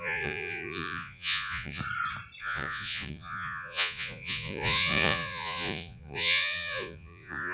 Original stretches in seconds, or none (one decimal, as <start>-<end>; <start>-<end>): 1.8-2.4